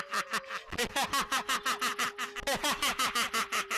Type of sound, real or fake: real